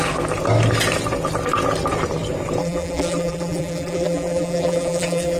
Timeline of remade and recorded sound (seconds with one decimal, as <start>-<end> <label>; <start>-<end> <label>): 0.0-2.6 recorded; 2.6-5.4 remade